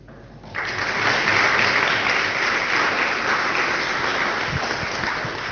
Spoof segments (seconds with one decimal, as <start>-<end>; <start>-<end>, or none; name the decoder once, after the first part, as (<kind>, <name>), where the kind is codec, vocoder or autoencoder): none